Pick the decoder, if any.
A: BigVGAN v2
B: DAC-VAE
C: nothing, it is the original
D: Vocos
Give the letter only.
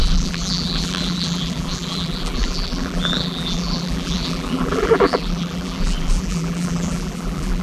A